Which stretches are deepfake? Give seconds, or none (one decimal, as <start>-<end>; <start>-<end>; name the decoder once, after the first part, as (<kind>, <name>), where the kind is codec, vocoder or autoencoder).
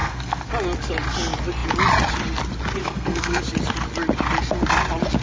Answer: 0.0-0.5 (codec, SNAC); 2.8-3.4